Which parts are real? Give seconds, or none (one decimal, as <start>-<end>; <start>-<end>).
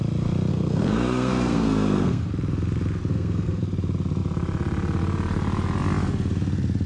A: 0.0-0.5; 2.3-3.1; 3.6-6.9